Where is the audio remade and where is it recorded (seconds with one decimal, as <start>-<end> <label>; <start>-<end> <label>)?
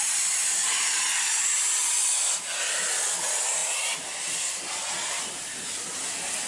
0.0-6.5 recorded